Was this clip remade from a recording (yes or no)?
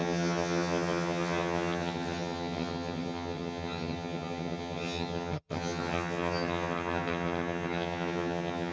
yes